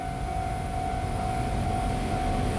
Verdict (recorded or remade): recorded